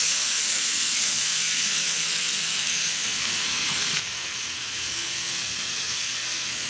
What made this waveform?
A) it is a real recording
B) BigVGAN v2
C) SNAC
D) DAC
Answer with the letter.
C